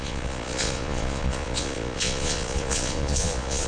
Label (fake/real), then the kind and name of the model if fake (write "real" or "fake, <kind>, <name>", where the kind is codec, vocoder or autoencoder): fake, vocoder, Vocos